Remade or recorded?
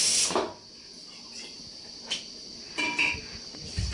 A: recorded